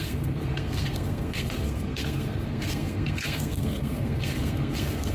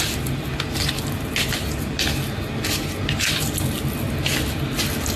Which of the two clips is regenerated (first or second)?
first